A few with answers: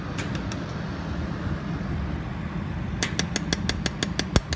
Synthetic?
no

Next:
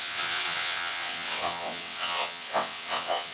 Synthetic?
yes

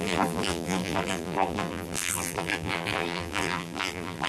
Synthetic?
yes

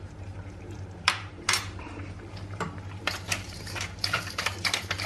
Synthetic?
yes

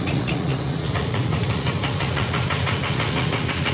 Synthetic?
yes